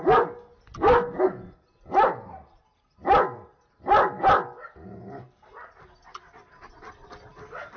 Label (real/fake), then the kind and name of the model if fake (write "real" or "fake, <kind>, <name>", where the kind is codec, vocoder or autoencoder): real